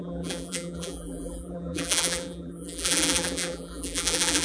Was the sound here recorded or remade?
remade